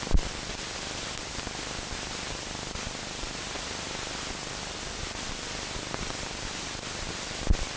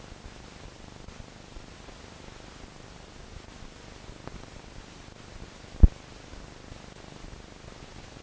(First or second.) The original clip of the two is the second